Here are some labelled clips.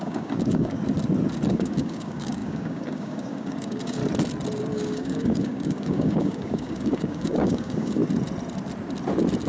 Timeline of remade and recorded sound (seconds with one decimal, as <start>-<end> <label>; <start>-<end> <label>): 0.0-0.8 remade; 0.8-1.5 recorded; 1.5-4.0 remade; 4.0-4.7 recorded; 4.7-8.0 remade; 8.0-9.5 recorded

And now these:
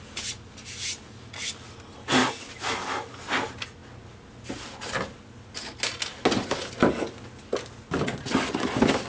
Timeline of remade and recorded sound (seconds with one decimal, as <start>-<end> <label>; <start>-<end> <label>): 0.0-2.2 recorded; 2.2-3.2 remade; 3.2-9.1 recorded

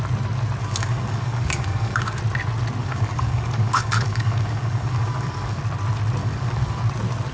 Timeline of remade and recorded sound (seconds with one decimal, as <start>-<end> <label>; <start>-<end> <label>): 0.0-0.6 recorded; 0.6-2.2 remade; 2.2-2.8 recorded; 2.8-5.6 remade; 5.6-6.2 recorded; 6.2-6.8 remade; 6.8-7.3 recorded

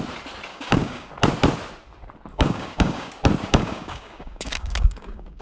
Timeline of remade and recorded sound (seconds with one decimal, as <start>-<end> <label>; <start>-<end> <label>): 0.0-0.5 recorded; 0.5-1.1 remade; 1.1-2.3 recorded; 2.3-3.1 remade; 3.1-3.5 recorded; 3.5-5.4 remade